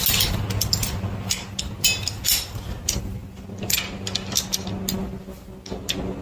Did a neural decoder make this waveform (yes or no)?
no